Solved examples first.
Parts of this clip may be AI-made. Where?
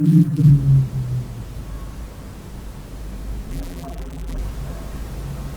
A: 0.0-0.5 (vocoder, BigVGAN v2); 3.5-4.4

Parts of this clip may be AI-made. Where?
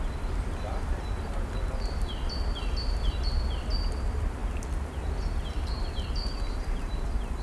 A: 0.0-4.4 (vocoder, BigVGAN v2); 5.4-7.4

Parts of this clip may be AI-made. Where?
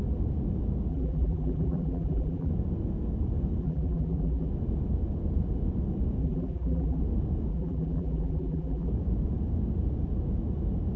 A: 0.9-2.5 (vocoder, BigVGAN v2); 3.6-4.5; 6.2-7.0; 7.5-8.9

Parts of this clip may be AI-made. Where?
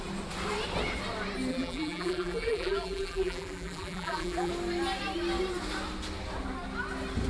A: 1.5-4.5 (vocoder, BigVGAN v2)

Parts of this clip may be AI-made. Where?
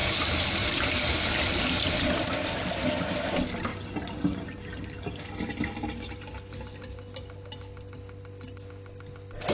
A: none